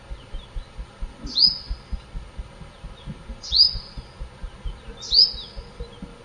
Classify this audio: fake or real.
real